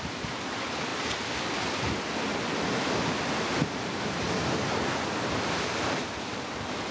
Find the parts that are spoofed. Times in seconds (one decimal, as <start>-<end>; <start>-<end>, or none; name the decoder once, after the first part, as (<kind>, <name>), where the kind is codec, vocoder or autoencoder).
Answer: none